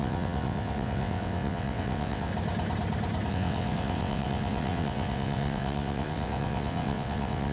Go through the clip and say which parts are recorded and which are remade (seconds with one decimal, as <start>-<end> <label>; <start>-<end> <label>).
0.0-2.3 remade; 2.3-3.3 recorded; 3.3-7.5 remade